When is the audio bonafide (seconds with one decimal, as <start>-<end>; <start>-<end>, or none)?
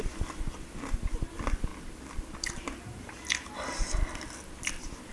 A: 0.0-5.1